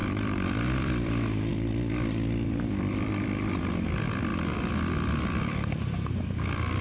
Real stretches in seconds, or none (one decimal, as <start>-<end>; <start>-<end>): 1.1-1.5; 3.7-4.3; 5.9-6.8